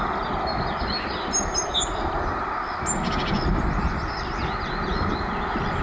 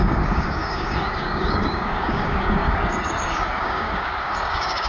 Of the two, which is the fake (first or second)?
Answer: second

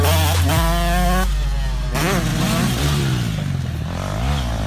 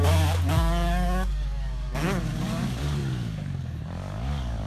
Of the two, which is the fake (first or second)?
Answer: second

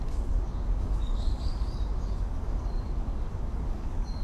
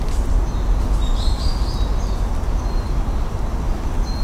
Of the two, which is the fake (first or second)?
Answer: first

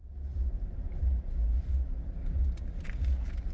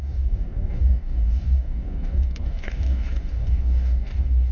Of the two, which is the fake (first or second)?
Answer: second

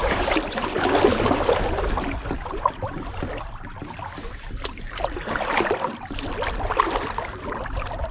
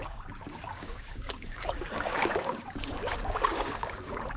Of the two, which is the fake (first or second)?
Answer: second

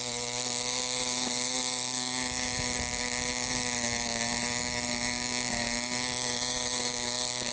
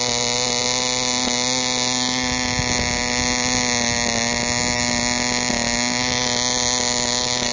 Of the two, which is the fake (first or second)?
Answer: first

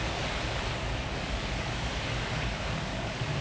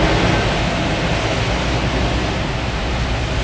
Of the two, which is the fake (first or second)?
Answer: first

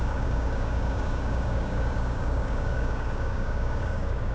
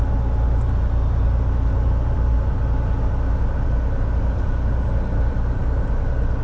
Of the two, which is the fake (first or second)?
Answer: first